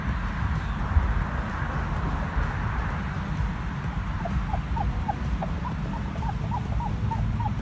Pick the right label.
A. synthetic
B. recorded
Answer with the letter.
B